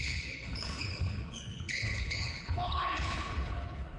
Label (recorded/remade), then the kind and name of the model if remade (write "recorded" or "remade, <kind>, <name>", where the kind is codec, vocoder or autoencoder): remade, codec, HILCodec